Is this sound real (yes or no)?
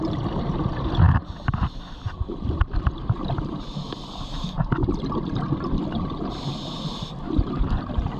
no